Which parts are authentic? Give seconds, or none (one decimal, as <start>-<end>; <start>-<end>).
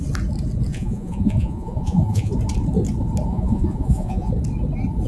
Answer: 0.0-0.7; 2.3-3.3; 4.3-5.1